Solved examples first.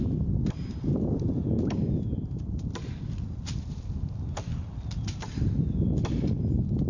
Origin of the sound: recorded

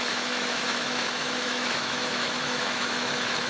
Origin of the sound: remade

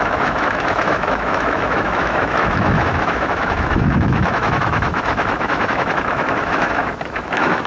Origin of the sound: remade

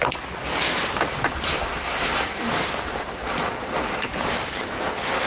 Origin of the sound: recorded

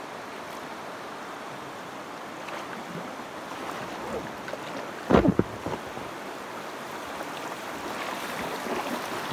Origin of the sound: recorded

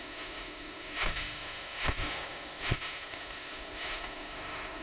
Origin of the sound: remade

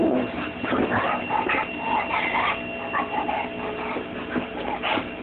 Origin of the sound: recorded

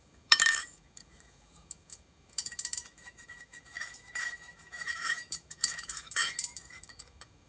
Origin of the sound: remade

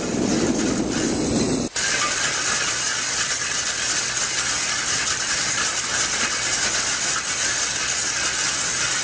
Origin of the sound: recorded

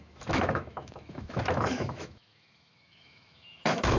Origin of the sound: remade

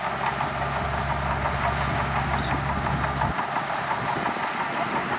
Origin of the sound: recorded